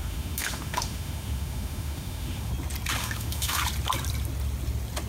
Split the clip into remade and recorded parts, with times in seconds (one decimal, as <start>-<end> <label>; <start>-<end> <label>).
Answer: 0.0-2.5 remade; 2.5-3.0 recorded; 3.0-3.6 remade; 3.6-5.1 recorded